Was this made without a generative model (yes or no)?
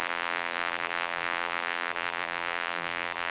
no